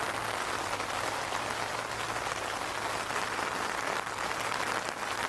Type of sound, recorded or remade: recorded